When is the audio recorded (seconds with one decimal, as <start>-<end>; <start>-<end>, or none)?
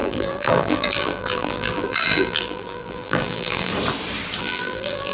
3.7-4.4